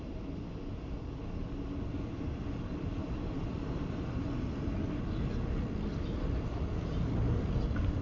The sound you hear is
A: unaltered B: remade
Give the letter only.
A